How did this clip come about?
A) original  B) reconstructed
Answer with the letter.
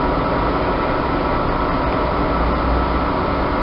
A